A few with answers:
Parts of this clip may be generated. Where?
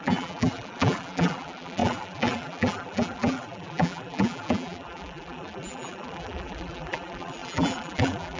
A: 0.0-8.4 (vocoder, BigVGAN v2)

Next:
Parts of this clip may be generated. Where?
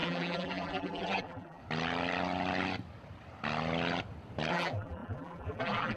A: 0.0-1.6 (vocoder, BigVGAN v2); 4.5-6.0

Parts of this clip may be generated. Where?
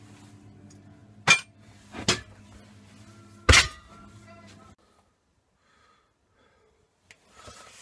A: none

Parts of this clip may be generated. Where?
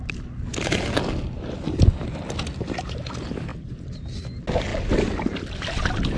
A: none